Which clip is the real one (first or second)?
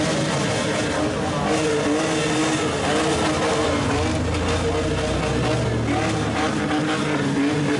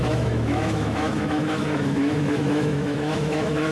first